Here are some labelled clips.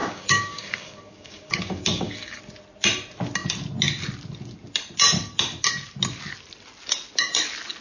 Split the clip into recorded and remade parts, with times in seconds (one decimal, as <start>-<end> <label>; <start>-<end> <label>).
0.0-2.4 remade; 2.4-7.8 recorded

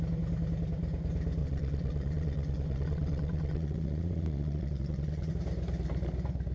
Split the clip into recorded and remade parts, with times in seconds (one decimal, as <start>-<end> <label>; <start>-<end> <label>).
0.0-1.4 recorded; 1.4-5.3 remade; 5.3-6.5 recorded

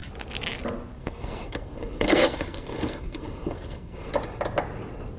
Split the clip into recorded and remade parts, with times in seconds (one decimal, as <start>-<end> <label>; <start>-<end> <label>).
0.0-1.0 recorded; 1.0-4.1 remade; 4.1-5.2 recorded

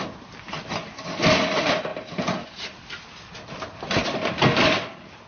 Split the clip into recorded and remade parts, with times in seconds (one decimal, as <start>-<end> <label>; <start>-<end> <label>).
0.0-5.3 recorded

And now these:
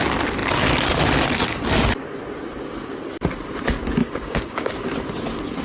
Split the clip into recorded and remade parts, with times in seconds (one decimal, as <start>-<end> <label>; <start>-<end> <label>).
0.0-4.0 recorded; 4.0-4.7 remade; 4.7-5.6 recorded

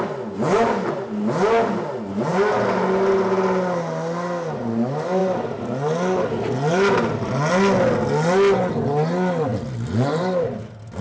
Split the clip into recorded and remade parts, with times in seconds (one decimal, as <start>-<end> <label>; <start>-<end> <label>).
0.0-11.0 recorded